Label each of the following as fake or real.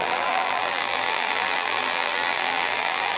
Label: fake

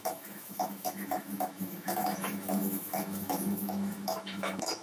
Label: fake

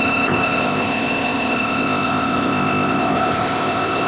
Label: fake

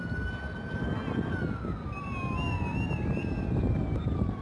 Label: real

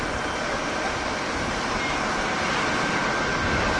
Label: real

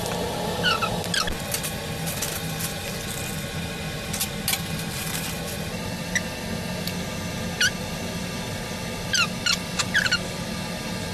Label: real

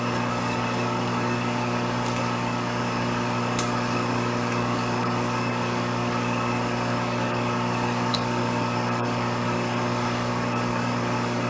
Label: fake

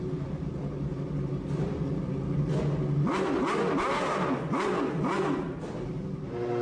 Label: real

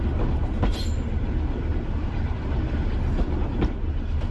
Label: real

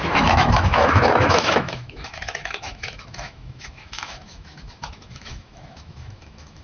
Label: fake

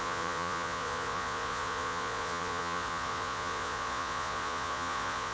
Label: fake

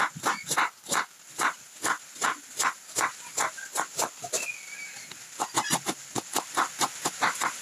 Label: real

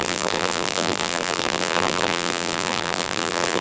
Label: fake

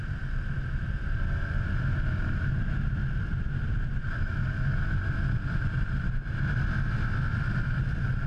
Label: real